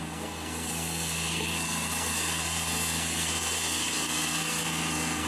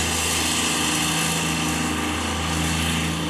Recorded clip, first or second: second